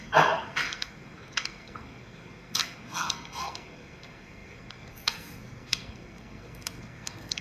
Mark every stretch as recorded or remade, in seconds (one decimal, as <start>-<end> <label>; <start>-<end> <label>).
0.0-7.4 remade